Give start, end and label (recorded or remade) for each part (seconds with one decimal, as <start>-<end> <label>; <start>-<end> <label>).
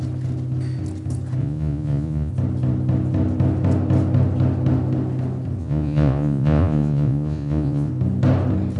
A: 0.0-1.4 recorded; 1.4-2.3 remade; 2.3-5.6 recorded; 5.6-7.9 remade; 7.9-8.8 recorded